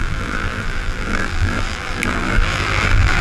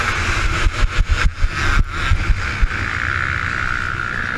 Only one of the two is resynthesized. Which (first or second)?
first